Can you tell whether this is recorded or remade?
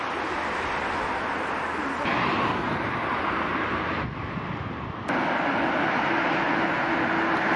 recorded